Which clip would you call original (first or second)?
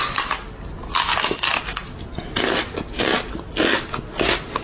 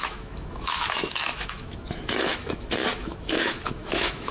first